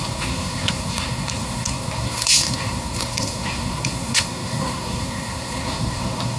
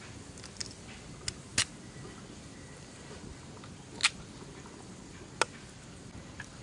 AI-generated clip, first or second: first